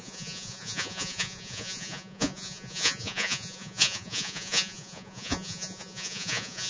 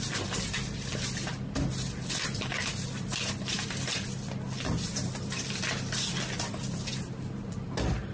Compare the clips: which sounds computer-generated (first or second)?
first